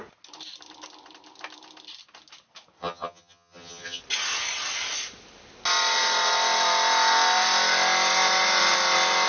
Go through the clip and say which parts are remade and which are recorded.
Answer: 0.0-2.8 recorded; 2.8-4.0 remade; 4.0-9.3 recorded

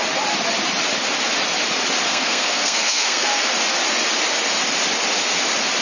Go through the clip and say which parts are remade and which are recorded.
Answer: 0.0-2.1 recorded; 2.1-3.5 remade; 3.5-5.8 recorded

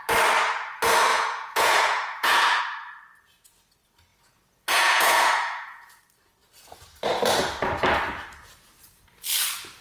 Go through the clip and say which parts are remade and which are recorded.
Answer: 0.0-1.1 recorded; 1.1-2.6 remade; 2.6-4.1 recorded; 4.1-6.0 remade; 6.0-9.8 recorded

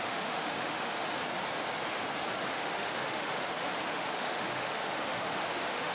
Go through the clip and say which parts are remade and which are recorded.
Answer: 0.0-1.0 remade; 1.0-2.5 recorded; 2.5-3.4 remade; 3.4-3.9 recorded; 3.9-5.9 remade